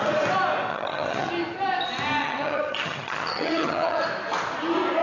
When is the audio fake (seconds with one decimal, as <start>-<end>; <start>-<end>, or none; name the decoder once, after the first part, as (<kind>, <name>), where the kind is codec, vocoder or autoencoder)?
0.7-1.3 (vocoder, HiFi-GAN); 2.2-4.0

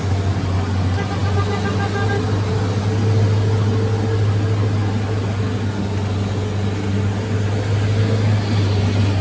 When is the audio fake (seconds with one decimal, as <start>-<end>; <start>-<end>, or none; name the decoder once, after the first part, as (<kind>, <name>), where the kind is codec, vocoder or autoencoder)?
none

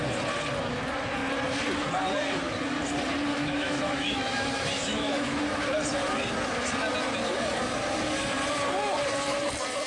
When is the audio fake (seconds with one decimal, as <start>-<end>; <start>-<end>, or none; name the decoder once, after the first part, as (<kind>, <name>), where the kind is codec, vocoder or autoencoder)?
3.3-5.4 (autoencoder, DAC-VAE)